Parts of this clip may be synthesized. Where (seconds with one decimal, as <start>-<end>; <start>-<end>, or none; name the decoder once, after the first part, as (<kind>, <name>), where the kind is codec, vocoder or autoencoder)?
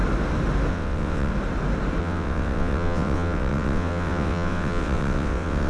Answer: 0.7-1.3 (vocoder, WaveNeXt); 2.0-5.7